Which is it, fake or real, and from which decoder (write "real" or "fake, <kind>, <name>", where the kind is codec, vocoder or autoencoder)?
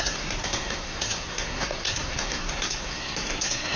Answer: fake, codec, SNAC